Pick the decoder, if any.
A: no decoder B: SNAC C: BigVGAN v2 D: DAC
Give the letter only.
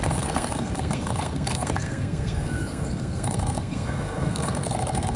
B